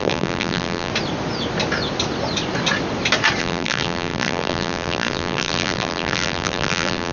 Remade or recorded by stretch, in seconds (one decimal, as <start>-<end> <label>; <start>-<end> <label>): 0.0-0.9 remade; 0.9-3.4 recorded; 3.4-7.1 remade